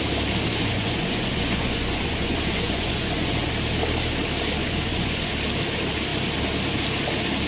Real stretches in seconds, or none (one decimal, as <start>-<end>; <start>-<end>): 0.0-0.6; 3.5-4.6; 5.3-7.5